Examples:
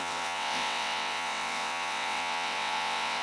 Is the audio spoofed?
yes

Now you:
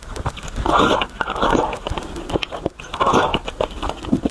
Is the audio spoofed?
no